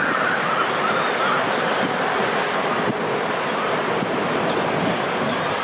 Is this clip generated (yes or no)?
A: no